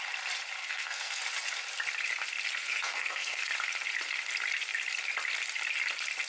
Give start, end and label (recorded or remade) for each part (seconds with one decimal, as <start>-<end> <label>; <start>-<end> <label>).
0.0-0.6 recorded; 0.6-1.2 remade; 1.2-2.6 recorded; 2.6-3.5 remade; 3.5-6.3 recorded